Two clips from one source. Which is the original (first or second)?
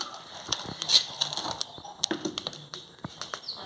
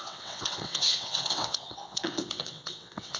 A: first